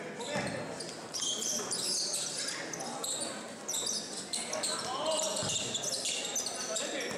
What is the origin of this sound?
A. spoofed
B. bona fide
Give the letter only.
B